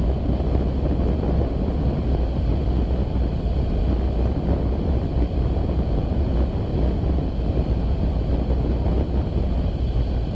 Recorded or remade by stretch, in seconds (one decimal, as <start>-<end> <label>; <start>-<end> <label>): 0.0-5.6 recorded; 5.6-6.3 remade; 6.3-10.3 recorded